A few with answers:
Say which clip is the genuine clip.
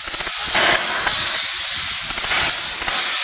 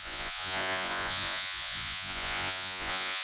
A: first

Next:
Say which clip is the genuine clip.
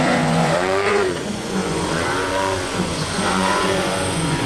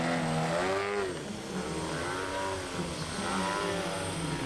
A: second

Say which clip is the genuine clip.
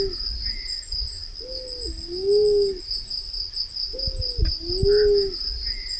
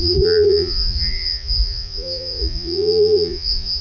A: first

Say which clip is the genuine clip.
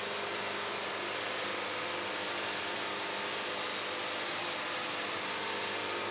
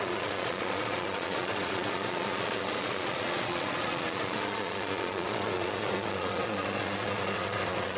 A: first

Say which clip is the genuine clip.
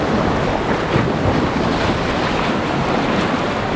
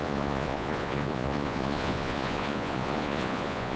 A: first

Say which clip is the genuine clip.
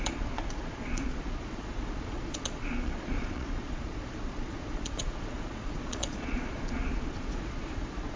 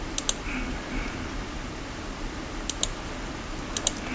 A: second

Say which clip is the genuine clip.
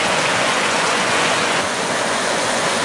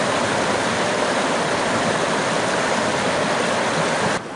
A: second